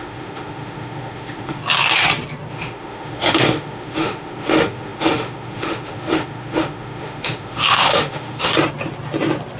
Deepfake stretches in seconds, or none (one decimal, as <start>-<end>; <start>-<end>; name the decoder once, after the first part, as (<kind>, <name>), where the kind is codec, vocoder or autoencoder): 0.0-1.6 (autoencoder, DAC-VAE); 2.5-8.5